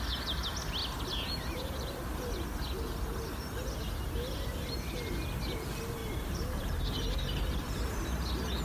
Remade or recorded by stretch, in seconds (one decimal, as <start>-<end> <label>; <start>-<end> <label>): 0.0-6.0 recorded; 6.0-8.6 remade